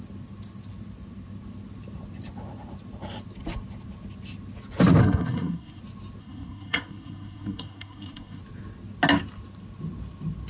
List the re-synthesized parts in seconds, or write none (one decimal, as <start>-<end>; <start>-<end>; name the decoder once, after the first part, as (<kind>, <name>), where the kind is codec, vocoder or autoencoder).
5.0-5.8 (codec, SNAC); 6.2-8.4